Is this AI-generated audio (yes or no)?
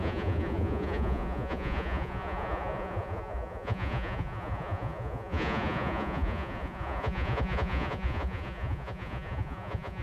yes